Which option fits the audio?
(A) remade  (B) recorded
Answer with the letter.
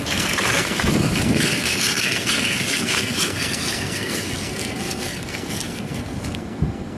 A